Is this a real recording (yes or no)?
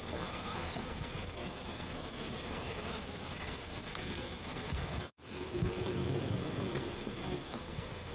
no